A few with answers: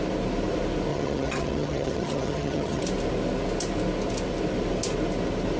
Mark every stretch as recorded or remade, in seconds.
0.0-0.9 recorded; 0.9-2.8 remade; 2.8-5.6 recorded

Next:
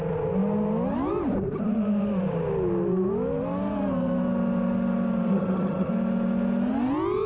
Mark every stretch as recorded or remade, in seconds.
0.0-5.3 recorded; 5.3-5.9 remade; 5.9-7.3 recorded

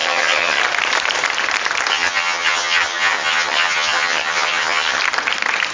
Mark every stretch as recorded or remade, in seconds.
0.0-0.6 remade; 0.6-1.9 recorded; 1.9-5.0 remade; 5.0-5.7 recorded